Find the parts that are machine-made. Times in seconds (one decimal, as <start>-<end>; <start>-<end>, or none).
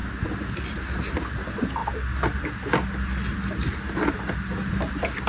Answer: none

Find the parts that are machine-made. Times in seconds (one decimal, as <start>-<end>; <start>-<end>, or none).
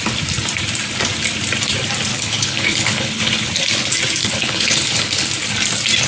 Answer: 2.1-3.5; 4.2-5.3